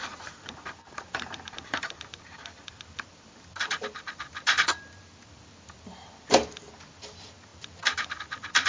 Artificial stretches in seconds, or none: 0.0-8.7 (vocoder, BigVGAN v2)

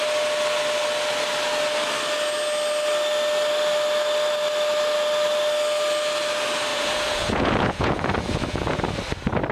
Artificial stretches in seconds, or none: 6.7-8.8 (vocoder, Vocos)

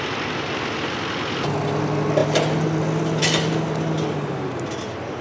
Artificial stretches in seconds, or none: none